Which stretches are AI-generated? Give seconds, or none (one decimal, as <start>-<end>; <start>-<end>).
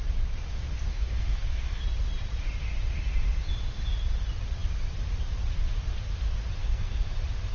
0.9-1.8; 6.6-7.1